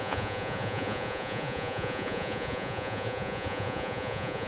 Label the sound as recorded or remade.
remade